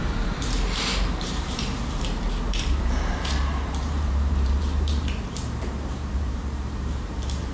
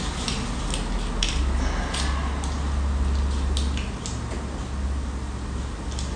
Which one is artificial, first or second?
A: first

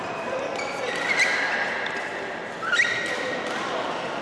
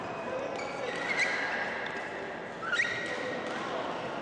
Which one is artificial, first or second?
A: first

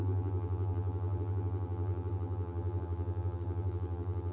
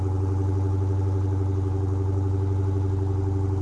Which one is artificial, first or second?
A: first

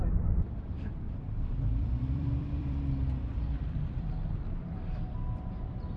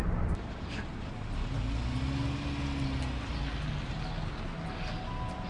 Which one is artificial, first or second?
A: first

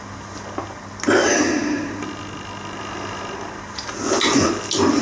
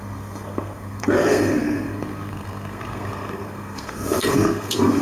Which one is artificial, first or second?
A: second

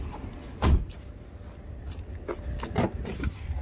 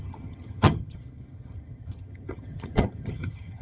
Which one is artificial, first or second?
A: second